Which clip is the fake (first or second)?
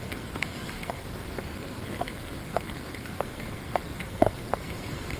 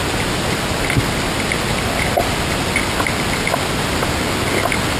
first